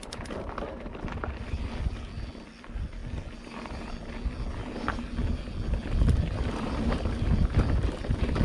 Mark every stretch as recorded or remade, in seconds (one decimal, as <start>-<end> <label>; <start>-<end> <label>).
0.0-8.4 recorded